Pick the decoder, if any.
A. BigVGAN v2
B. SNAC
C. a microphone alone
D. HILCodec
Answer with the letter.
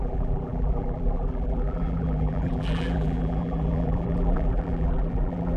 A